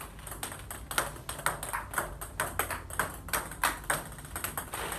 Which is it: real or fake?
real